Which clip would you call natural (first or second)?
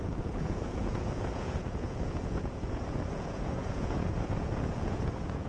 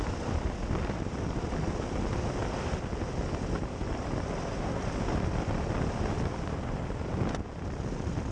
second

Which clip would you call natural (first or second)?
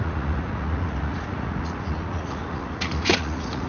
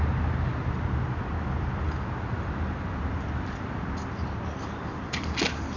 second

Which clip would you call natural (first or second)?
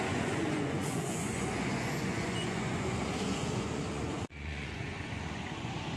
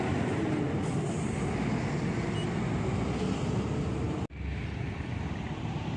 second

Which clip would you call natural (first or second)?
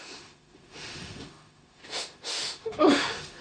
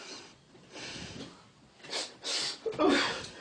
second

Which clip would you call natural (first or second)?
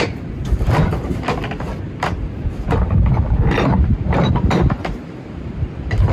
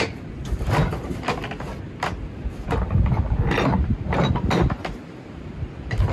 second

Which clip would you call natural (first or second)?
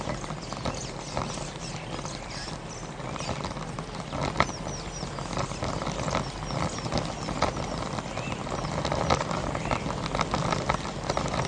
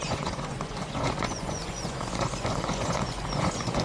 first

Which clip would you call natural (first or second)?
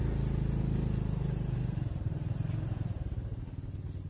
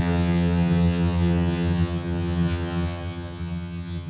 first